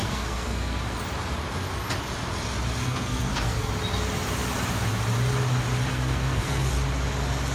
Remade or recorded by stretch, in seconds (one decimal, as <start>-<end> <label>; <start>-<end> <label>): 0.0-1.0 remade; 1.0-2.8 recorded; 2.8-3.7 remade; 3.7-5.9 recorded; 5.9-6.7 remade; 6.7-7.5 recorded